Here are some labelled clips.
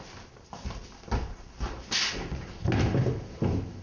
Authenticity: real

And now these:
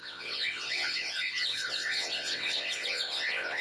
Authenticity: fake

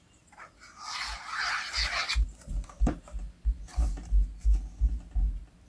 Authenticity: real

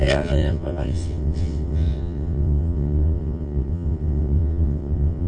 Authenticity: fake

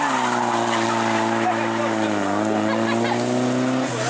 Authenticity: real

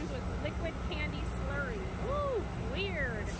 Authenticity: real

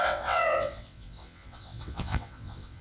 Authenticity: fake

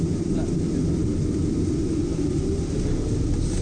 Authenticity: real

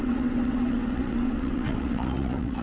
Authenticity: fake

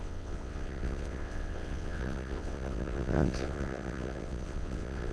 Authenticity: fake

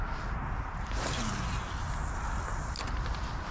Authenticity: real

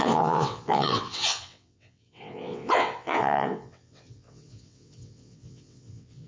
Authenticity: fake